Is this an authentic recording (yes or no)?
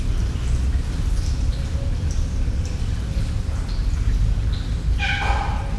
yes